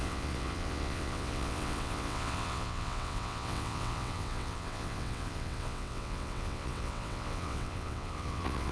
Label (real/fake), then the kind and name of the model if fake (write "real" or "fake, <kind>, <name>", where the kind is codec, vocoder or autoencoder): fake, vocoder, WaveNeXt